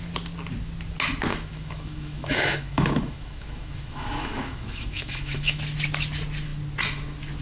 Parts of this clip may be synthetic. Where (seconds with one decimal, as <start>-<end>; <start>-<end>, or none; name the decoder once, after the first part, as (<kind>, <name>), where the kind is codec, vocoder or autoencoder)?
1.3-5.6 (autoencoder, DAC-VAE)